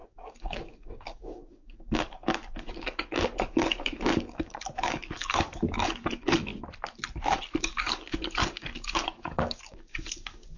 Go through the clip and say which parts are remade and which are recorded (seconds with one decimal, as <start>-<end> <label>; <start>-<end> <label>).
0.0-6.5 remade; 6.5-7.6 recorded; 7.6-10.6 remade